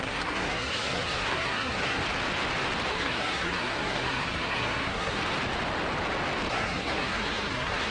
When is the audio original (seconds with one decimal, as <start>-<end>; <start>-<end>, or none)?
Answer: 2.0-2.9; 5.2-6.5